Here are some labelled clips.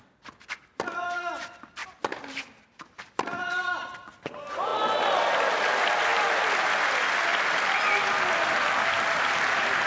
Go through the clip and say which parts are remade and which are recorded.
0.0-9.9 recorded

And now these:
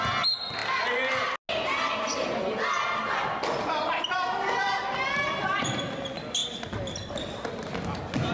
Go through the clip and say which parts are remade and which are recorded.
0.0-8.3 recorded